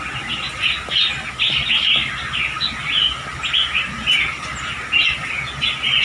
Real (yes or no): yes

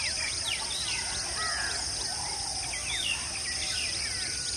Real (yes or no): yes